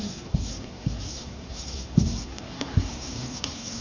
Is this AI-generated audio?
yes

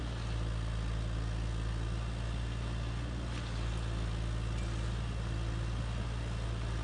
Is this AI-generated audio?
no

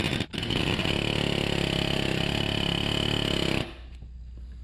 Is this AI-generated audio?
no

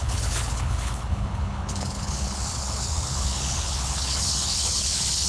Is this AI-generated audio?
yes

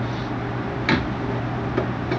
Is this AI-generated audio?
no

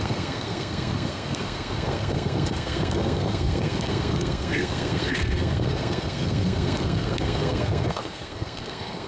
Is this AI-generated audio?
yes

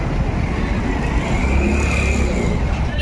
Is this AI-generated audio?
no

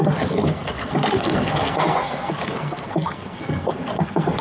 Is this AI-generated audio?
yes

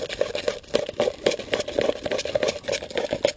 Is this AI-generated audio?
no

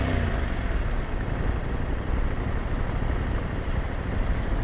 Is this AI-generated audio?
no